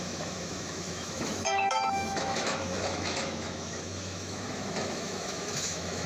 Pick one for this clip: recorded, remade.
remade